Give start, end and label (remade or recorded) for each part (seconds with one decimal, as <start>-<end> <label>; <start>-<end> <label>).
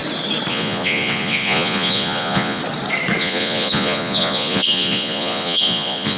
0.0-0.5 recorded; 0.5-2.6 remade; 2.6-3.2 recorded; 3.2-6.2 remade